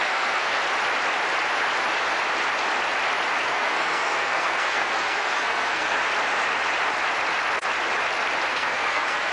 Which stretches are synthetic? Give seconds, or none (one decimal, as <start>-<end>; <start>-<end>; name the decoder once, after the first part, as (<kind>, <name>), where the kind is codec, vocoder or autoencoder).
0.0-0.6 (codec, SNAC); 3.4-6.0; 8.5-9.3